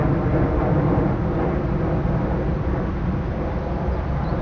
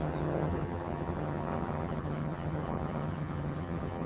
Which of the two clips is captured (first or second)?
first